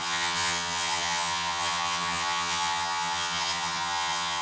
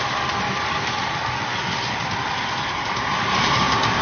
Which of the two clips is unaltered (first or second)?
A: second